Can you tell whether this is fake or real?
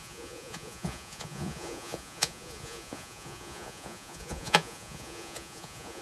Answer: fake